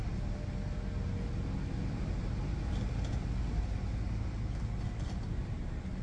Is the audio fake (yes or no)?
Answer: no